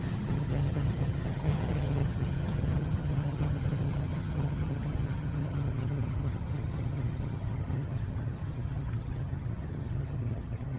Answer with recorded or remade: remade